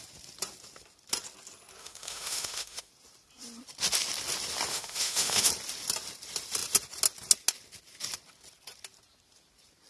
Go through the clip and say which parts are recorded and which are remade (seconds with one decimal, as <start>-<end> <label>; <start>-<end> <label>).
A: 0.0-1.8 recorded; 1.8-2.9 remade; 2.9-4.7 recorded; 4.7-5.5 remade; 5.5-9.9 recorded

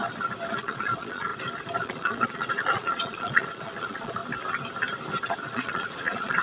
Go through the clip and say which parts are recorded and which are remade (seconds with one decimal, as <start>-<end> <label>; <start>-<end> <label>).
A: 0.0-0.5 recorded; 0.5-1.3 remade; 1.3-1.8 recorded; 1.8-4.2 remade; 4.2-5.5 recorded; 5.5-6.4 remade